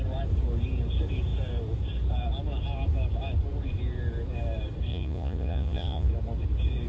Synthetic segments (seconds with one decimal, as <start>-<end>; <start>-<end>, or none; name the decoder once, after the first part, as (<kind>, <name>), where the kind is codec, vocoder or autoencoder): 4.9-6.1 (vocoder, Vocos)

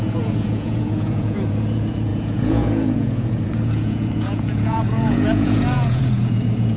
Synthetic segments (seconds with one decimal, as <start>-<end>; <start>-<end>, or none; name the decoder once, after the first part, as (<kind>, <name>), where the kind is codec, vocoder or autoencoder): 0.0-6.8 (vocoder, Vocos)